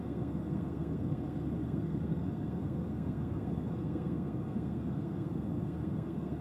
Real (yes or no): no